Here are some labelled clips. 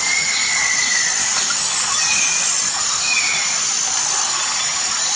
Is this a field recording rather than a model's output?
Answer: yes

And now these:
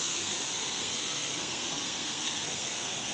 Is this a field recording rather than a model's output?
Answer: no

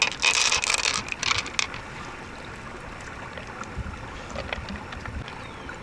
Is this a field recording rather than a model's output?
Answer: yes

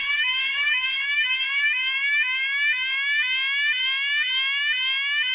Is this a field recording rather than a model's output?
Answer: no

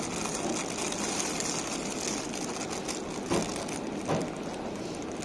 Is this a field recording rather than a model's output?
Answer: yes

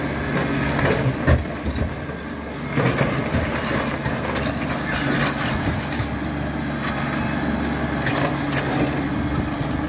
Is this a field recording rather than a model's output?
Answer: yes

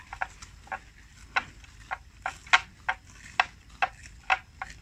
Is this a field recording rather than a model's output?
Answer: yes